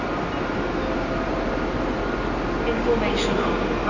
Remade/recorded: recorded